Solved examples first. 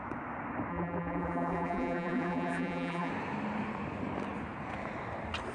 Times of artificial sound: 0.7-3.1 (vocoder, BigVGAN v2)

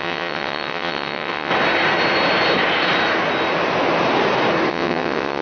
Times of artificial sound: 0.0-1.5 (vocoder, WaveNeXt); 4.7-5.4

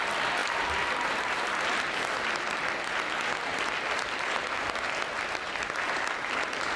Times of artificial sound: none

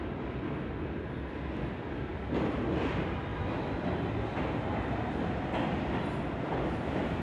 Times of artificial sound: none

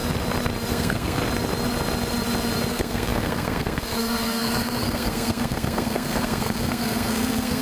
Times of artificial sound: 0.7-1.2 (codec, SNAC); 2.7-7.6

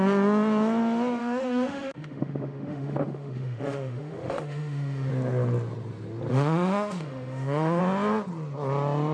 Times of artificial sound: 1.2-5.1 (autoencoder, DAC-VAE); 6.3-7.8

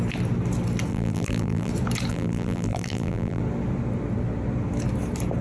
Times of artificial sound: 0.9-1.7 (vocoder, BigVGAN v2); 2.1-3.4

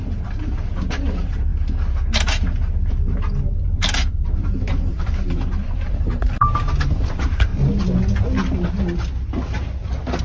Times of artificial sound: 0.0-1.5 (vocoder, BigVGAN v2); 2.9-7.5